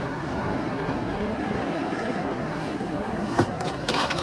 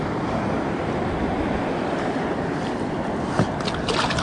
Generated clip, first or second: first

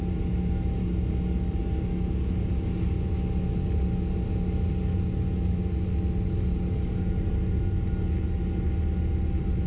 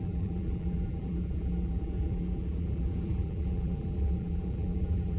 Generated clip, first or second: second